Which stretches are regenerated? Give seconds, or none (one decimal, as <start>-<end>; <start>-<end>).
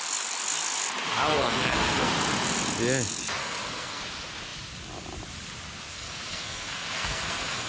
1.3-2.1; 3.4-4.0; 5.9-7.7